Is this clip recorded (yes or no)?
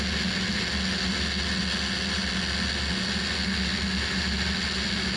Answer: yes